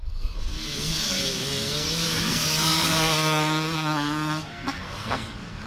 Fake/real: fake